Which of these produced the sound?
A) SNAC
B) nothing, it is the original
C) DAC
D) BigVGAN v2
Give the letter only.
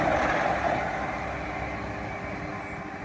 B